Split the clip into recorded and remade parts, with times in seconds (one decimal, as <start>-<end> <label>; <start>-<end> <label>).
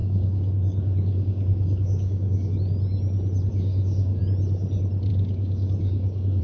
0.0-2.6 remade; 2.6-3.5 recorded; 3.5-4.2 remade; 4.2-5.1 recorded; 5.1-6.4 remade